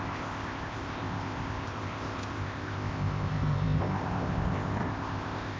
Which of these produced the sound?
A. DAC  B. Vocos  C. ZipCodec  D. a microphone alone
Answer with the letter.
C